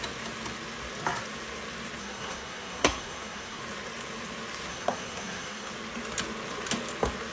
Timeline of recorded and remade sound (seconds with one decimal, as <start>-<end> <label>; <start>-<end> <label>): 0.0-2.0 recorded; 2.0-3.6 remade; 3.6-4.7 recorded; 4.7-5.7 remade; 5.7-7.3 recorded

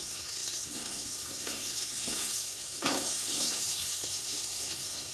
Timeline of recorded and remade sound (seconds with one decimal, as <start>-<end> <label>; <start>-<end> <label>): 0.0-5.1 remade

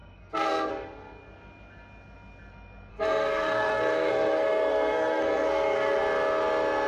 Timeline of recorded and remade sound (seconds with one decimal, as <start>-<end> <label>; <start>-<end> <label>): 0.0-0.7 remade; 0.7-2.9 recorded; 2.9-6.0 remade; 6.0-6.9 recorded

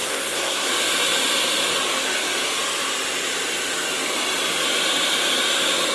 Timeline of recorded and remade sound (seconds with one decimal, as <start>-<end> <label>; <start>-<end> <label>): 0.0-0.7 remade; 0.7-5.9 recorded

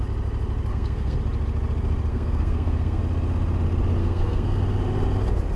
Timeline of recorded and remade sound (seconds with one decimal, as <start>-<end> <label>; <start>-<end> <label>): 0.0-0.7 recorded; 0.7-1.2 remade; 1.2-2.1 recorded; 2.1-3.0 remade; 3.0-4.0 recorded; 4.0-4.6 remade; 4.6-5.6 recorded